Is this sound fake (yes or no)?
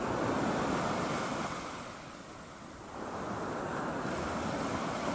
no